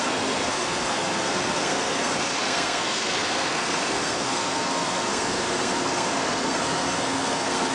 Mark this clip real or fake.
fake